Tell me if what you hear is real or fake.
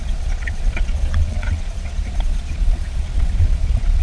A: fake